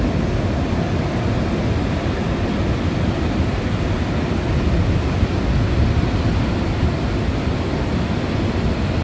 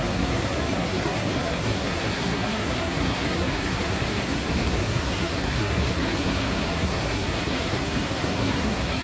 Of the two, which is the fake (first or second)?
second